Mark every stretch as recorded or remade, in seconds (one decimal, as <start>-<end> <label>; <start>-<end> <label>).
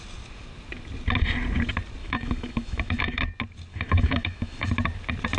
0.0-2.0 recorded; 2.0-3.2 remade; 3.2-3.7 recorded; 3.7-4.7 remade; 4.7-5.4 recorded